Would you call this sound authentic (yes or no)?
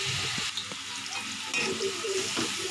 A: yes